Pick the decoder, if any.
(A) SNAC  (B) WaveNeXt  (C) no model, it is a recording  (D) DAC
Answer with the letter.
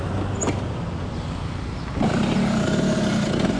C